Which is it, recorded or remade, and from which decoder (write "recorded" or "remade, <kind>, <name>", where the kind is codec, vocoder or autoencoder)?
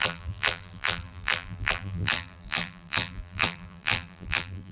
remade, vocoder, BigVGAN v2